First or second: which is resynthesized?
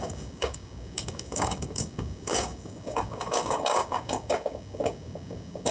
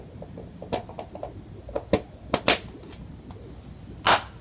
first